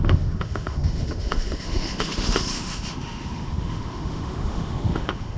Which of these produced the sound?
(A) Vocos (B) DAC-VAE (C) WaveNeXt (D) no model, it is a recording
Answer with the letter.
B